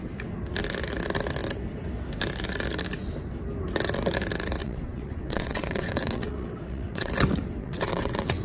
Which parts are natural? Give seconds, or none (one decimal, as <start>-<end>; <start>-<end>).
0.0-4.6; 7.1-7.6